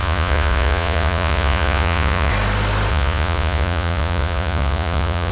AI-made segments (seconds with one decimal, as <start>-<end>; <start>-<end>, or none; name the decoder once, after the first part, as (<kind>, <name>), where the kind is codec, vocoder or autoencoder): 0.0-2.3 (vocoder, Vocos); 2.9-5.3